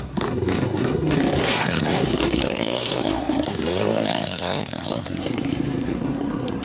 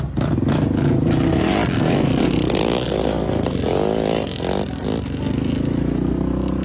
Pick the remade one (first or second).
first